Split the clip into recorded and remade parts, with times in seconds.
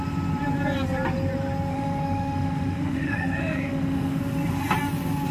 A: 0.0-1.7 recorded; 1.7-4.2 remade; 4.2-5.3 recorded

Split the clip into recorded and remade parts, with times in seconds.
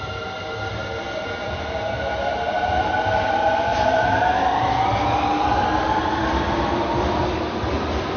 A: 0.0-8.2 recorded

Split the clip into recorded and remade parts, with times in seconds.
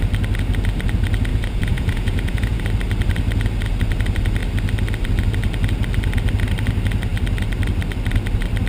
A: 0.0-1.3 recorded; 1.3-2.6 remade; 2.6-8.7 recorded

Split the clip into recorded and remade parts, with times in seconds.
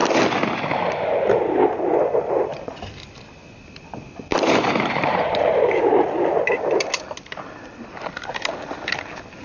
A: 0.0-4.3 recorded; 4.3-6.9 remade; 6.9-9.4 recorded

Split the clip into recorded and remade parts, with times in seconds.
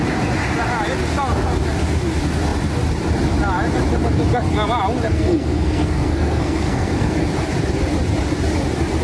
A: 0.0-5.1 recorded; 5.1-7.2 remade; 7.2-9.0 recorded